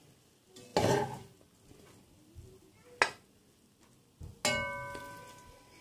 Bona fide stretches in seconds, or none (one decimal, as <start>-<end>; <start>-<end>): 0.0-5.8

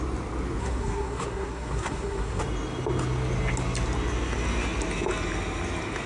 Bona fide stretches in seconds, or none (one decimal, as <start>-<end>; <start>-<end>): 0.0-0.6; 2.4-6.1

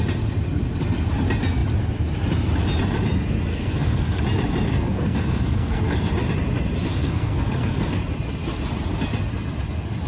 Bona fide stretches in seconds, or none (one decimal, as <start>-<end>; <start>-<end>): 0.0-3.5; 4.2-4.7; 6.1-6.9; 8.0-10.1

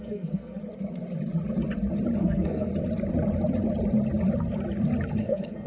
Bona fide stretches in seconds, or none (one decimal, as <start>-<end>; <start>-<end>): 0.6-2.2; 2.7-5.2

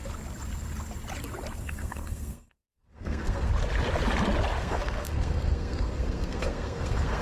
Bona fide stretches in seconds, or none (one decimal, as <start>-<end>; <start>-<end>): 0.0-1.6; 3.5-4.6

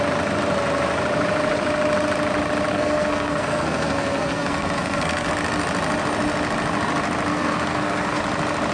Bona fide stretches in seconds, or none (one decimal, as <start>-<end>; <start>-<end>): 0.0-2.7; 5.3-7.3; 8.2-8.7